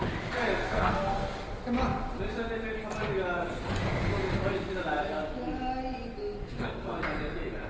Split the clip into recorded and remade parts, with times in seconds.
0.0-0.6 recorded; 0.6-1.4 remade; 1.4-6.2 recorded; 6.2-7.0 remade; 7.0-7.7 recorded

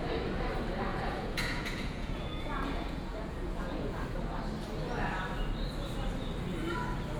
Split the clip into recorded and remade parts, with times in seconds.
0.0-0.9 recorded; 0.9-4.0 remade; 4.0-7.2 recorded

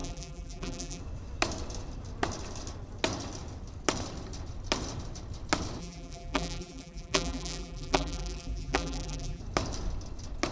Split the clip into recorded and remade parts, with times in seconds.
0.0-1.0 remade; 1.0-5.8 recorded; 5.8-9.4 remade; 9.4-10.5 recorded

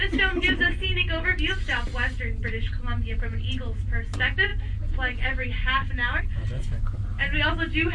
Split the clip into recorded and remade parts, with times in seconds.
0.0-7.9 recorded

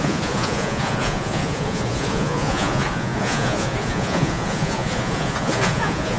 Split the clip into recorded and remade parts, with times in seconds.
0.0-6.2 remade

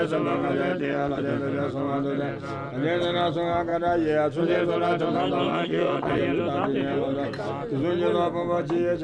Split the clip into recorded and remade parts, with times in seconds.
0.0-0.7 recorded; 0.7-1.2 remade; 1.2-5.5 recorded; 5.5-6.2 remade; 6.2-9.0 recorded

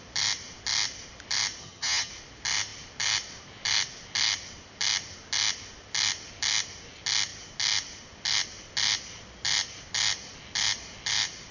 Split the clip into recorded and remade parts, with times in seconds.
0.0-1.6 recorded; 1.6-2.1 remade; 2.1-11.5 recorded

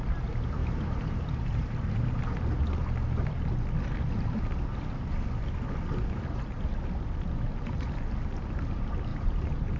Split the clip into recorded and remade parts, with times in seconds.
0.0-0.6 recorded; 0.6-2.1 remade; 2.1-9.1 recorded; 9.1-9.8 remade